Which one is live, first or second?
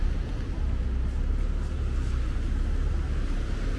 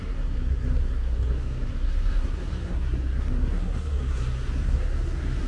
first